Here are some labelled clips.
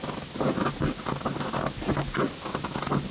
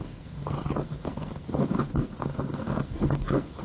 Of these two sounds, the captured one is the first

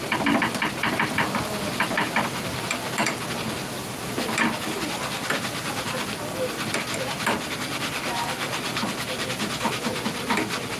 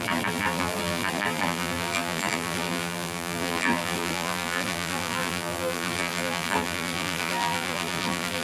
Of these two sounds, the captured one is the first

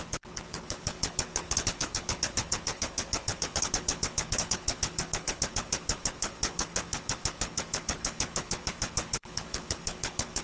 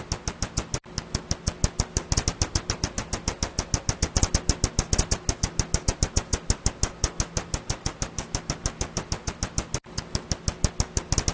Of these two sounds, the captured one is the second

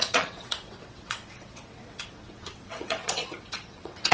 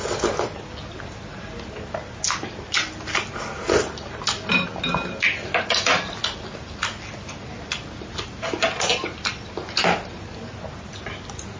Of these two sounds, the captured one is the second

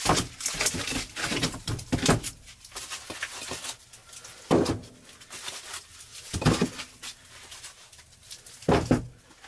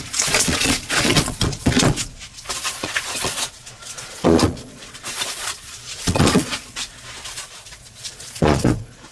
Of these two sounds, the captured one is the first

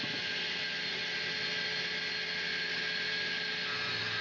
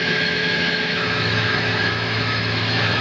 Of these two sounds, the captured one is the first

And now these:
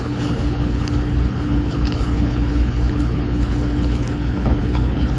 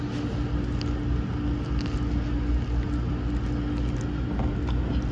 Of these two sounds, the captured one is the second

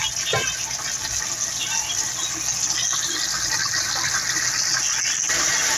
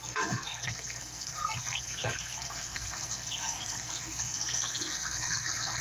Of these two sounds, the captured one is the first